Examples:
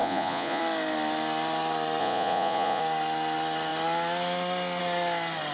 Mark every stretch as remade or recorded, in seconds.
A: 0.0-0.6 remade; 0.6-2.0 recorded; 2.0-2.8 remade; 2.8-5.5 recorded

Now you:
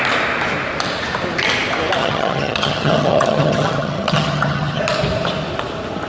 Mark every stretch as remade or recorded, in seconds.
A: 0.0-2.0 recorded; 2.0-4.8 remade; 4.8-6.1 recorded